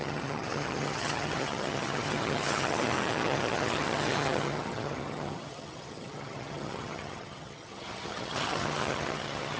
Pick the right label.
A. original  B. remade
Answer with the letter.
B